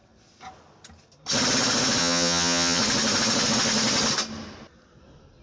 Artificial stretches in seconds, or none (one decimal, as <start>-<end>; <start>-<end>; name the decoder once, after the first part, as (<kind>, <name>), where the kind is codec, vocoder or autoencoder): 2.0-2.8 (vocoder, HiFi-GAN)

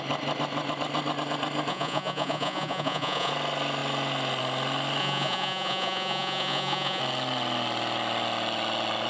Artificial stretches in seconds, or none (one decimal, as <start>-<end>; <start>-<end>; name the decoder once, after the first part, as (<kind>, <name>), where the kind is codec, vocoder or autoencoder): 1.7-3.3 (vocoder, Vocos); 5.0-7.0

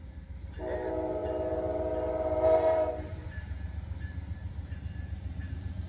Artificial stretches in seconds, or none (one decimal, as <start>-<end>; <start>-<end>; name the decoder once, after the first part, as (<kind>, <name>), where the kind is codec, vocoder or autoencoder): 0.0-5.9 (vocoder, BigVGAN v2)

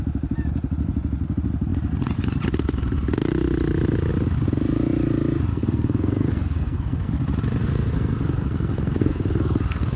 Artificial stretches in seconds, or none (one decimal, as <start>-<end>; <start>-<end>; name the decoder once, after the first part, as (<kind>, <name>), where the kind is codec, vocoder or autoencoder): 5.5-7.1 (codec, SNAC); 7.6-10.0

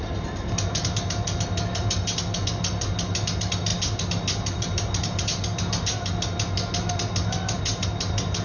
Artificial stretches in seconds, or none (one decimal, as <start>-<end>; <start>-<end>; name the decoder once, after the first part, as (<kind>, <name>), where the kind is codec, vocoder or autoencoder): none

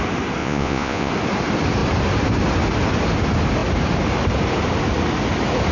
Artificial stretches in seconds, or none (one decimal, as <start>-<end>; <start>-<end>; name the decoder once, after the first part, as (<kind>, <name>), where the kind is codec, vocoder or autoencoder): 0.4-1.1 (vocoder, Vocos)

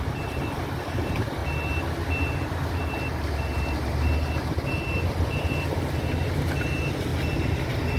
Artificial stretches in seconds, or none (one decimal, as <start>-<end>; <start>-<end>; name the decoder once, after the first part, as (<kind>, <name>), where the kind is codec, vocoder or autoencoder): 0.0-1.4 (vocoder, BigVGAN v2); 6.2-7.1